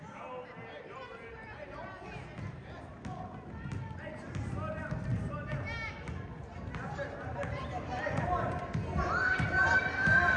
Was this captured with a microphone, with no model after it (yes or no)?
yes